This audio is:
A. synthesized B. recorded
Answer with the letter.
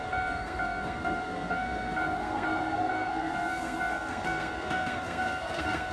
A